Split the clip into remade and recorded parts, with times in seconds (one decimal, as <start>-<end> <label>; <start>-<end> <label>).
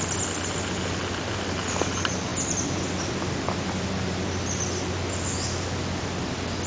0.0-6.7 recorded